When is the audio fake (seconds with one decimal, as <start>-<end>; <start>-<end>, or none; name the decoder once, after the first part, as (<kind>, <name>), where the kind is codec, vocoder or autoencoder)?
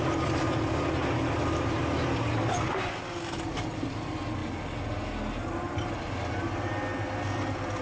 none